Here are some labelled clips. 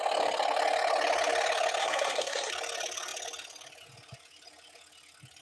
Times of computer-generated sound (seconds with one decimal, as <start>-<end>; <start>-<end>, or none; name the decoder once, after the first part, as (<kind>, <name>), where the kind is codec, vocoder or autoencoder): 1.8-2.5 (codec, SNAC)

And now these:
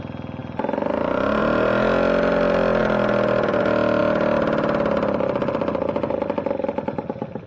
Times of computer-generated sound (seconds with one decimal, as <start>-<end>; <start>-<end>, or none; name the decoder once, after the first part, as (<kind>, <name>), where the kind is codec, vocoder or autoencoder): none

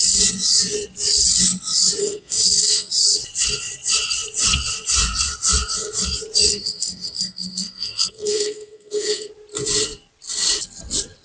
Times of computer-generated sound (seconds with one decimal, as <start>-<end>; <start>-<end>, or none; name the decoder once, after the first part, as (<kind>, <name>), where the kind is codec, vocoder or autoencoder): 2.0-2.9 (codec, SNAC); 6.5-9.3

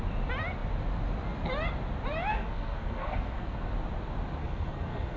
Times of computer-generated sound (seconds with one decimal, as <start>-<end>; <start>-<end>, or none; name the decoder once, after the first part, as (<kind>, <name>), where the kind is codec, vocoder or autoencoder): 2.3-3.7 (codec, SNAC); 4.4-5.2